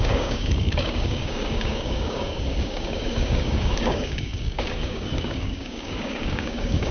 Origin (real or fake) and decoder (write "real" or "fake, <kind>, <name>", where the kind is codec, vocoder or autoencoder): fake, codec, DAC